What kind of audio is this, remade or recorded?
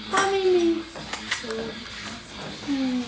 recorded